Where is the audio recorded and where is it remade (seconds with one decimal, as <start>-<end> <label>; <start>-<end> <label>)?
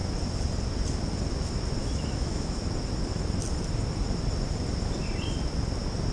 0.0-1.8 recorded; 1.8-2.6 remade; 2.6-6.1 recorded